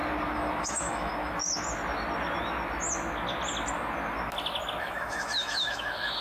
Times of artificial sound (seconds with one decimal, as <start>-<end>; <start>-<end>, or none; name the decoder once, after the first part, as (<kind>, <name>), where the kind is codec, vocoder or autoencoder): 0.6-1.1 (autoencoder, DAC-VAE); 4.8-6.2